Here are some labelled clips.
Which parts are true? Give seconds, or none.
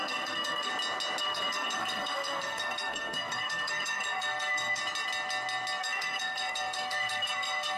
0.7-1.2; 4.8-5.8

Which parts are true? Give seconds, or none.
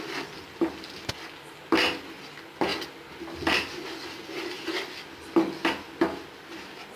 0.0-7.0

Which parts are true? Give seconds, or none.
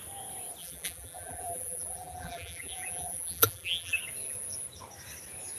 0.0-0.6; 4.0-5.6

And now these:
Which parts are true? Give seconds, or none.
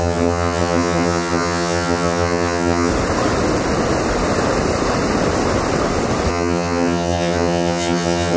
2.9-6.3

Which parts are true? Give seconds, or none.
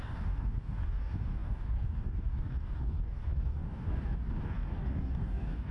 none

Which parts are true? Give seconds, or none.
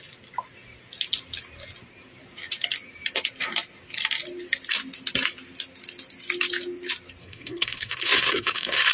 0.0-7.2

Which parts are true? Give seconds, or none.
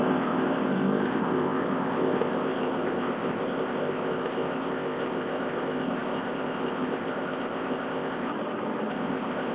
8.3-8.9